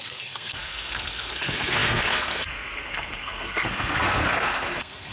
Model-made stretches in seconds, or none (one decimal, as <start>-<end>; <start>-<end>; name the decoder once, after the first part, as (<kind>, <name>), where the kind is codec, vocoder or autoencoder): 0.0-5.1 (codec, SNAC)